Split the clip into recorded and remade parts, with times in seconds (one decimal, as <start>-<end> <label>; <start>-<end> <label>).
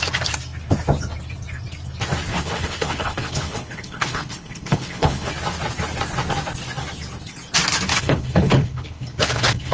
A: 0.0-2.3 recorded; 2.3-5.3 remade; 5.3-7.9 recorded; 7.9-9.7 remade